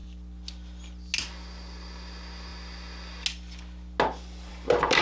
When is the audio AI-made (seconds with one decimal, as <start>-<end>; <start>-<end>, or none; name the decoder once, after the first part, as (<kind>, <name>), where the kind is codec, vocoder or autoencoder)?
none